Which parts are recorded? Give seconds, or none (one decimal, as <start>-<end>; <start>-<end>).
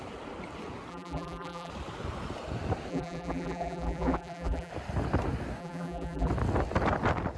0.0-0.9; 1.7-2.9; 4.7-5.6; 6.3-7.4